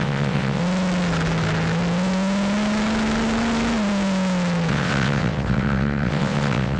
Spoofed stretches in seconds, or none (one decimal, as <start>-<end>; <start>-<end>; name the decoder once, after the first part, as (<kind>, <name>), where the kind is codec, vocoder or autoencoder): 0.0-0.6 (vocoder, WaveNeXt); 4.7-6.8